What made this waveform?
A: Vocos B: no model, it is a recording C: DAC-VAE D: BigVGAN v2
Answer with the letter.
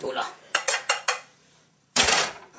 A